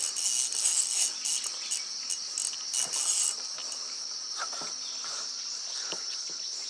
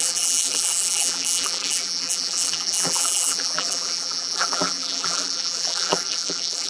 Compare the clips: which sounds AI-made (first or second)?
second